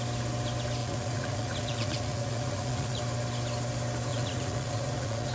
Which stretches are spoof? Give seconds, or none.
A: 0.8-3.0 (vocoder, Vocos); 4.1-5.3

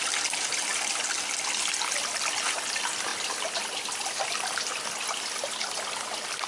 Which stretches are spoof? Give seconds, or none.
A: none

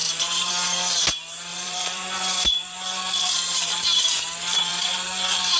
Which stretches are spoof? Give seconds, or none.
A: 0.0-0.5 (vocoder, BigVGAN v2); 1.5-4.2; 4.7-5.6

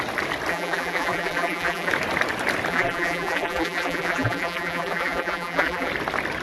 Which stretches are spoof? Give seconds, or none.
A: 0.5-1.9 (vocoder, BigVGAN v2); 2.7-5.9